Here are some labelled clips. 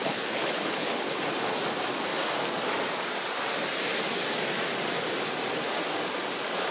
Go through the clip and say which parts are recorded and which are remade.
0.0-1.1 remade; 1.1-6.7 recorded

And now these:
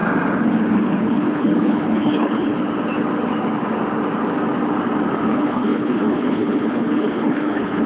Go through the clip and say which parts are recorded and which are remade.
0.0-0.6 recorded; 0.6-2.6 remade; 2.6-5.1 recorded; 5.1-7.9 remade

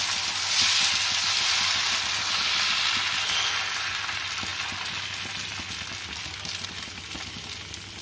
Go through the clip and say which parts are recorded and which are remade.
0.0-8.0 recorded

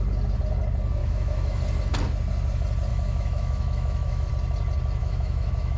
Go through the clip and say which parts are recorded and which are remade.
0.0-1.0 recorded; 1.0-1.6 remade; 1.6-2.9 recorded; 2.9-4.3 remade; 4.3-5.0 recorded; 5.0-5.8 remade

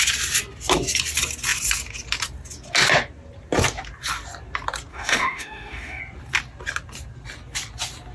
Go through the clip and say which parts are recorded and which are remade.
0.0-4.9 recorded; 4.9-6.0 remade; 6.0-8.1 recorded

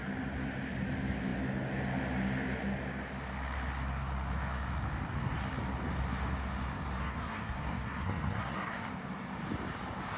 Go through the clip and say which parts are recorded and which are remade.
0.0-7.0 recorded; 7.0-8.9 remade; 8.9-10.2 recorded

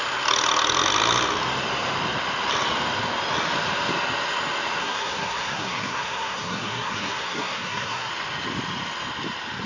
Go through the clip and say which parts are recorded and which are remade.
0.0-4.8 recorded; 4.8-8.1 remade; 8.1-9.7 recorded